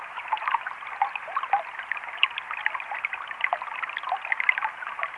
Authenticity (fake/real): real